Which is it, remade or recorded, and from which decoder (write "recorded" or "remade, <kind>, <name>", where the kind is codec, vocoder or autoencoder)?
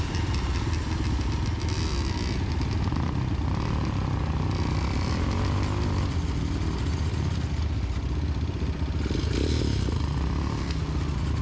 recorded